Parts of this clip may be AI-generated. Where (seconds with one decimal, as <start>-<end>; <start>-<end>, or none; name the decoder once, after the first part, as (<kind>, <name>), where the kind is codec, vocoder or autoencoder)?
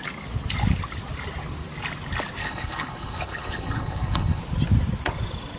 2.4-4.4 (codec, HILCodec)